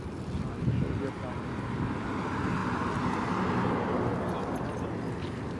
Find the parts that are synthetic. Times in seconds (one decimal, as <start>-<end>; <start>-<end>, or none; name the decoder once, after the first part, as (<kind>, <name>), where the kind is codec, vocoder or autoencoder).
none